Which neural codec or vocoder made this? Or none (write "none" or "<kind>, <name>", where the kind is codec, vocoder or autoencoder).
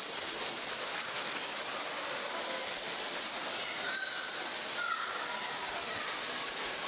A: none